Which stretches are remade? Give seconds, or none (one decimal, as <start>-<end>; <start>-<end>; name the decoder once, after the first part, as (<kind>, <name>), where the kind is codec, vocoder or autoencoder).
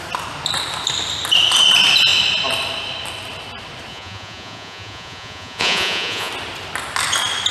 3.9-6.3 (vocoder, Vocos)